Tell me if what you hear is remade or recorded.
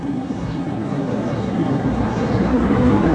remade